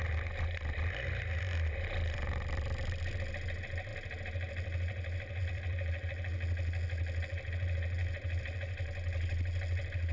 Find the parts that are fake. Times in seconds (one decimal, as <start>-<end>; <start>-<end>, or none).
none